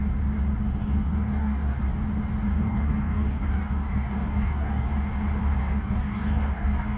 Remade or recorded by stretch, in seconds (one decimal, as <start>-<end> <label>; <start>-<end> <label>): 0.0-0.8 recorded; 0.8-1.8 remade; 1.8-2.5 recorded; 2.5-4.9 remade; 4.9-5.6 recorded; 5.6-7.0 remade